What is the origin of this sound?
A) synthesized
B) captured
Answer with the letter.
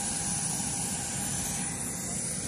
B